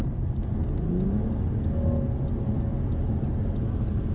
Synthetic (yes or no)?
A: no